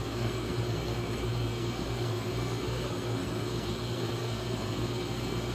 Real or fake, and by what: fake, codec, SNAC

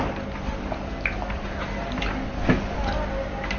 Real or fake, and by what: real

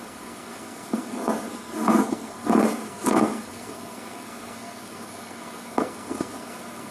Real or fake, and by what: fake, codec, SNAC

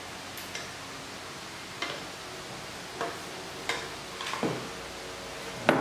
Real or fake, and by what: real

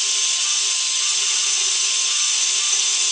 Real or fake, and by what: real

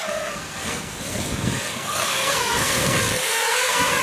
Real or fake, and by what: fake, codec, SNAC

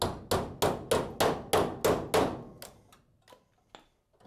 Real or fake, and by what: real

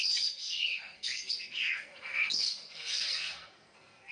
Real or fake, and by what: fake, codec, SNAC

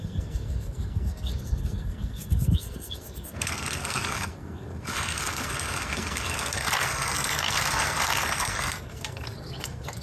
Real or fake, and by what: fake, codec, SNAC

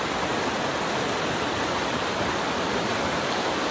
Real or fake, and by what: real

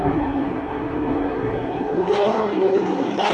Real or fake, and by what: fake, codec, SNAC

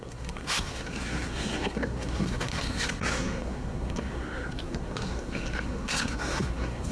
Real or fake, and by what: fake, codec, SNAC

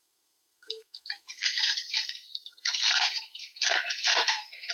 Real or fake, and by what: fake, codec, SNAC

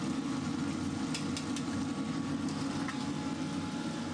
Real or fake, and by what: real